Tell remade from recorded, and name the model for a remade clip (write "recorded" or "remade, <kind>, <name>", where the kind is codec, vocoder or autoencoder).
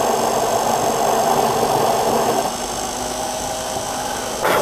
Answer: recorded